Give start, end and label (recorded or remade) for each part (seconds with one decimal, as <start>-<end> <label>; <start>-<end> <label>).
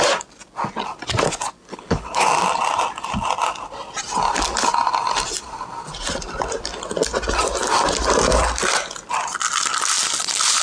0.0-1.7 recorded; 1.7-2.3 remade; 2.3-10.6 recorded